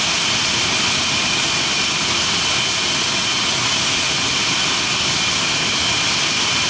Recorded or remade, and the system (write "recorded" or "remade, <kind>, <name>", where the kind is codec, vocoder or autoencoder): recorded